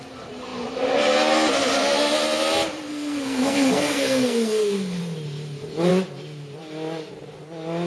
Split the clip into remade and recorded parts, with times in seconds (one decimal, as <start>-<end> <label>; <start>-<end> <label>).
0.0-2.9 recorded; 2.9-5.0 remade; 5.0-7.9 recorded